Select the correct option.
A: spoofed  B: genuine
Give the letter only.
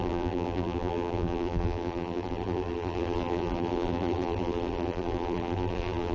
A